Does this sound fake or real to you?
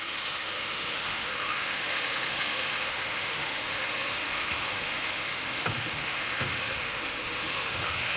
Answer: fake